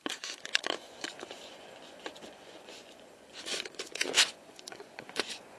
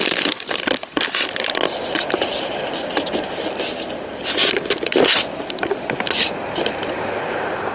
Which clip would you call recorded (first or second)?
second